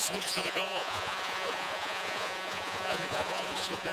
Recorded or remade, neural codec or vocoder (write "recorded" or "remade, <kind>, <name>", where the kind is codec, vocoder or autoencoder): remade, vocoder, Vocos